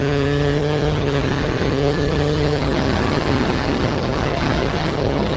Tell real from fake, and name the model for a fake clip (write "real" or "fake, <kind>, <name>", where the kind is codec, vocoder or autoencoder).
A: fake, vocoder, HiFi-GAN